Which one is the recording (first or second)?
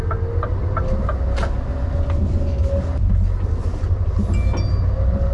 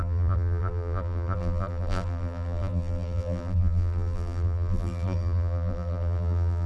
first